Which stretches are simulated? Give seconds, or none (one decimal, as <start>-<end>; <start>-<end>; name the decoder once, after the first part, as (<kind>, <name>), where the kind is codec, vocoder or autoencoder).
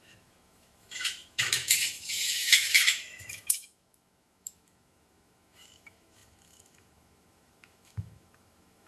0.0-8.9 (autoencoder, DAC-VAE)